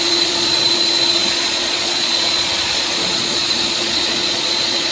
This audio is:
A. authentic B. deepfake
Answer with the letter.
B